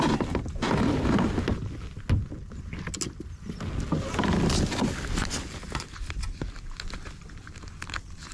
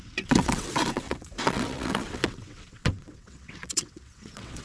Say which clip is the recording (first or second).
first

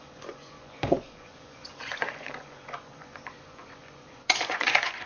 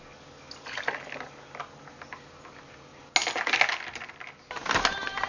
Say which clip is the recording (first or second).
second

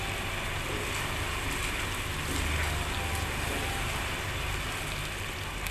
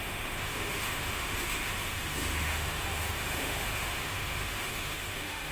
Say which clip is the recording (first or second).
first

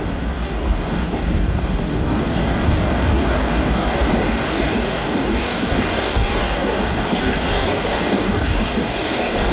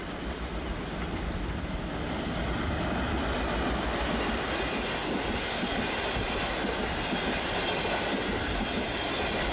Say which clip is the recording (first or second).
second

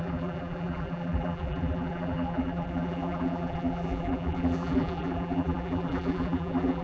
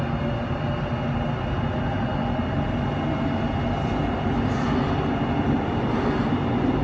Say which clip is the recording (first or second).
second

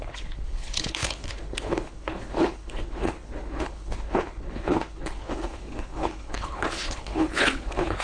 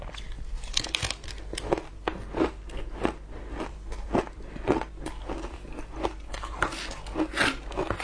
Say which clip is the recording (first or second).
second